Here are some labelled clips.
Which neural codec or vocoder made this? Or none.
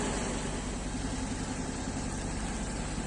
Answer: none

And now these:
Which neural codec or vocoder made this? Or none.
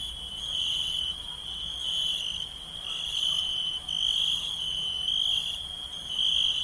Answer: none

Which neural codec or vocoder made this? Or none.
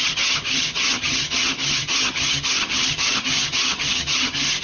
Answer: vocoder, HiFi-GAN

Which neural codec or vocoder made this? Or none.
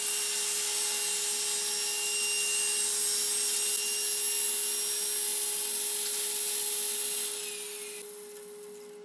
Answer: none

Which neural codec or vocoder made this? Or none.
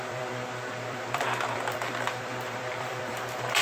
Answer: vocoder, BigVGAN v2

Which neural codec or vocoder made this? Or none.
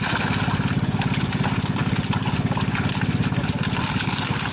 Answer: none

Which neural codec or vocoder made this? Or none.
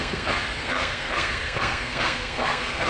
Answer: codec, SNAC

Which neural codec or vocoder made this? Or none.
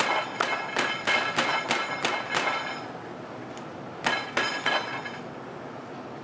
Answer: none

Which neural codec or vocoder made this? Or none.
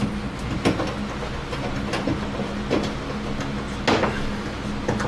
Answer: none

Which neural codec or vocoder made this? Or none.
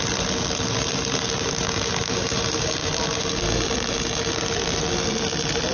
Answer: none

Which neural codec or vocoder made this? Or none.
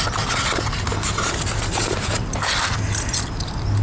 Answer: none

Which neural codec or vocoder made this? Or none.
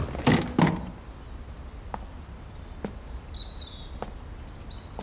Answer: none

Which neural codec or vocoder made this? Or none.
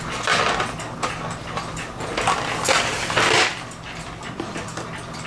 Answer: none